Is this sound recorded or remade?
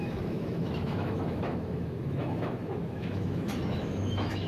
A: remade